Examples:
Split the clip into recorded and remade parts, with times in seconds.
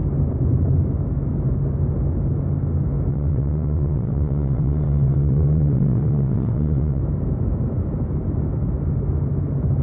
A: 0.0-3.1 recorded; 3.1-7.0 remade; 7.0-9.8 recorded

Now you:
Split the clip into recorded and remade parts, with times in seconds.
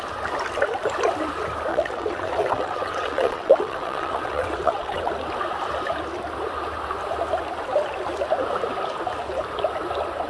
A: 0.0-1.7 recorded; 1.7-5.1 remade; 5.1-10.3 recorded